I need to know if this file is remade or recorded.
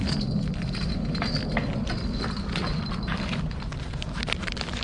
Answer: recorded